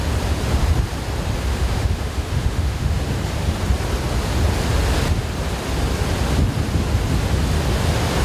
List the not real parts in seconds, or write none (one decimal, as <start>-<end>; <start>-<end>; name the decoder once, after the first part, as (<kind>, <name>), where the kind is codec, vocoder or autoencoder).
1.5-3.0 (autoencoder, DAC-VAE)